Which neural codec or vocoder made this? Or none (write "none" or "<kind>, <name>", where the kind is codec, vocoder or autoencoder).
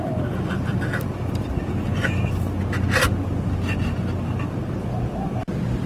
none